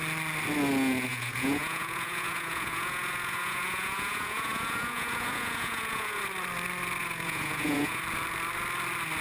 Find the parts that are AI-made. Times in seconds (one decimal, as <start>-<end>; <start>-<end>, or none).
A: 1.1-6.2; 7.0-8.0